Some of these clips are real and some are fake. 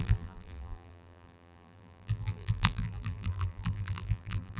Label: fake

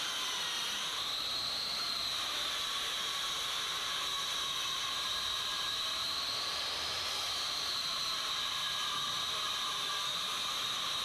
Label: fake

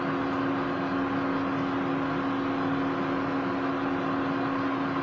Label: real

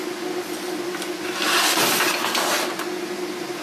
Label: real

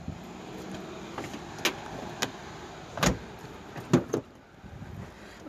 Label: real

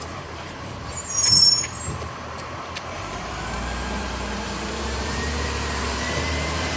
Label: fake